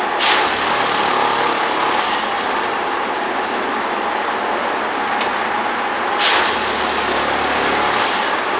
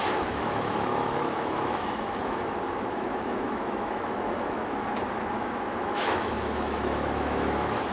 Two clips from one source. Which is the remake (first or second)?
second